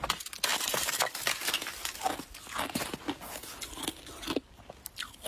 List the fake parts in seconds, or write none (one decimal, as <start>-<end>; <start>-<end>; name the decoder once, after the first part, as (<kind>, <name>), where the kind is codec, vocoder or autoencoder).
none